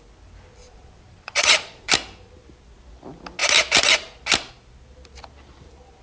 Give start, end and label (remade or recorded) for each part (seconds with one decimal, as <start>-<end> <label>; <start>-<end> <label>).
0.0-0.6 recorded; 0.6-1.9 remade; 1.9-6.0 recorded